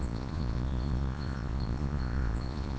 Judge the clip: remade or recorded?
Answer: remade